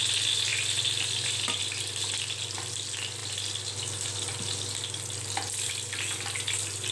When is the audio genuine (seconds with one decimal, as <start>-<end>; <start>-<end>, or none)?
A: 0.0-6.9